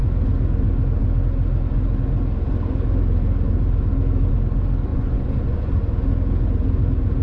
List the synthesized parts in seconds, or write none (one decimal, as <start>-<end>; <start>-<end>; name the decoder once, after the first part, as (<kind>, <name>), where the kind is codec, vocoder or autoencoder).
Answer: 4.9-5.8 (vocoder, Vocos)